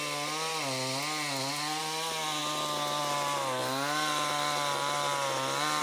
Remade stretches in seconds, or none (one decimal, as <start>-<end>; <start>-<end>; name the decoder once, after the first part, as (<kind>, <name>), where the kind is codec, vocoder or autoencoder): none